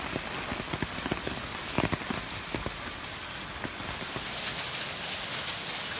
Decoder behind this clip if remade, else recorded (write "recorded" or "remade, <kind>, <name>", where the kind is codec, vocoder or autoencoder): recorded